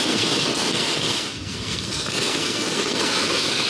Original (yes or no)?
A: no